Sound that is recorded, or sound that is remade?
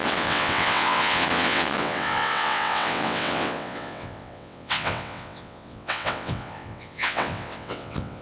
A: remade